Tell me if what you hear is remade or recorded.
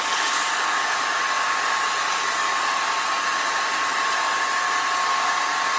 recorded